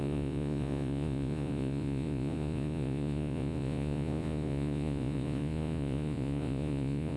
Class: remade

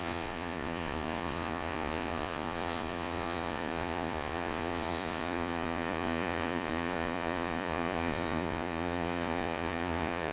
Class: remade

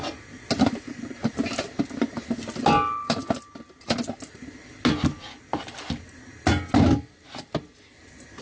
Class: recorded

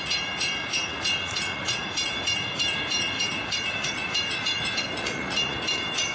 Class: remade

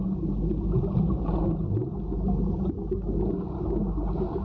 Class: recorded